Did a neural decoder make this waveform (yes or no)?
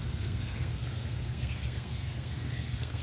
yes